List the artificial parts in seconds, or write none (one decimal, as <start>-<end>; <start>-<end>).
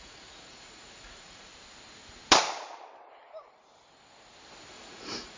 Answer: 0.0-1.5; 4.7-5.4